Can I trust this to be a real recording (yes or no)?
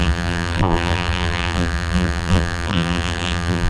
no